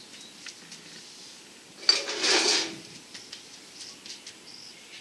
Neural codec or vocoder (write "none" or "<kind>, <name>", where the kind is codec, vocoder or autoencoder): none